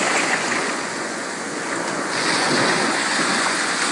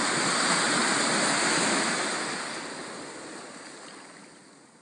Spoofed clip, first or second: first